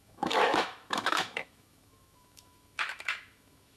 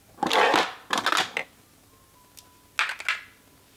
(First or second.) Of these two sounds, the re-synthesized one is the first